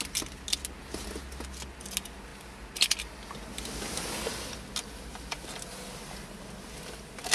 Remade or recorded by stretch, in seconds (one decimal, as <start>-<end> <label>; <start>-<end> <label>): 0.0-7.3 recorded